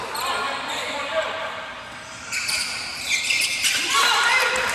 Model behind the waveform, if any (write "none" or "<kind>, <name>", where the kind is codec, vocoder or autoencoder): none